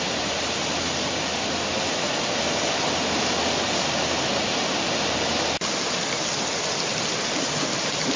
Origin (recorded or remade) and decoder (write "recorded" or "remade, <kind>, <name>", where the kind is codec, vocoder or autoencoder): recorded